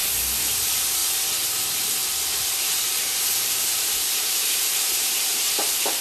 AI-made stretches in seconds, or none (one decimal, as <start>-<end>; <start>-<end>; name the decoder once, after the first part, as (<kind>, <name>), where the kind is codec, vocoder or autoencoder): 0.5-1.0 (vocoder, BigVGAN v2); 1.6-2.0; 2.7-6.0